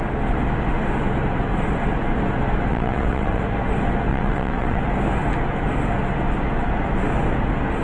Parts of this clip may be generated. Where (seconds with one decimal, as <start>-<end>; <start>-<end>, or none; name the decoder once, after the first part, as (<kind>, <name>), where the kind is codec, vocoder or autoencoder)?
2.7-3.4 (vocoder, WaveNeXt); 4.1-4.8

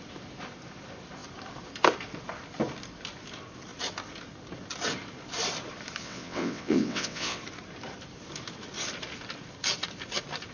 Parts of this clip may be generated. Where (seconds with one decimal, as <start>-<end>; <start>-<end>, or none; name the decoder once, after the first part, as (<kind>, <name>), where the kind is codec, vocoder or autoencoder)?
6.0-7.4 (vocoder, WaveNeXt)

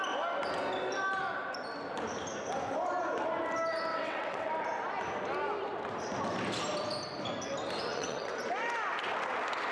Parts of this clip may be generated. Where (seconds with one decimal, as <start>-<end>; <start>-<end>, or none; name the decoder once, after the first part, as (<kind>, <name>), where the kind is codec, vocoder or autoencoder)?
3.9-4.5 (vocoder, WaveNeXt); 7.9-8.4

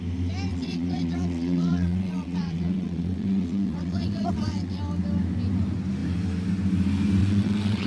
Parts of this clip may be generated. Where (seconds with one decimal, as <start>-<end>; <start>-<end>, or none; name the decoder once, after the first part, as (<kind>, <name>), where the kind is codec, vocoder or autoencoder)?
0.5-4.8 (vocoder, WaveNeXt); 7.2-7.9

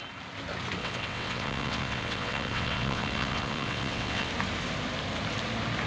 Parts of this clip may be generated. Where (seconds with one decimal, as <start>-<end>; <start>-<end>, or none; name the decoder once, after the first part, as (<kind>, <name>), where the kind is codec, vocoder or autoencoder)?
0.8-4.3 (vocoder, WaveNeXt)